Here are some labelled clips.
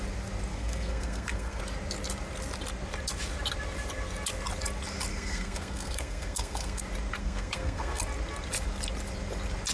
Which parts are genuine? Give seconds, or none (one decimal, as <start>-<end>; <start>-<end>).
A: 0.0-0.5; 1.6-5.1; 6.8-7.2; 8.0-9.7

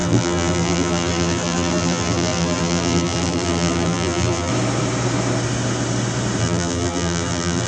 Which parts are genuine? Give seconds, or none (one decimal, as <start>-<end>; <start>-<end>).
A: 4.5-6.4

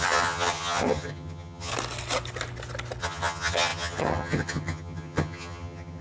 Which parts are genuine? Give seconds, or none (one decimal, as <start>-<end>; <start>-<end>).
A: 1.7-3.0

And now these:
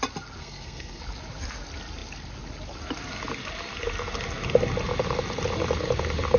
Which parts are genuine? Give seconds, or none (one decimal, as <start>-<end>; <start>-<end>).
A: 0.0-0.4; 1.0-6.4